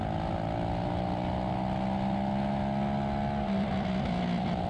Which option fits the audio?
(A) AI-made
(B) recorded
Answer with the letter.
B